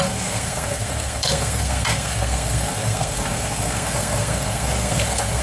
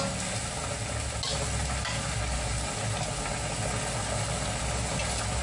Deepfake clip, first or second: first